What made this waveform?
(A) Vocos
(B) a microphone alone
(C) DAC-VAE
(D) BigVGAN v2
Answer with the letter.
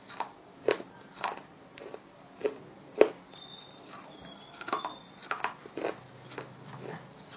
B